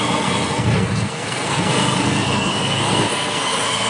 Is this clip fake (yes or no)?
yes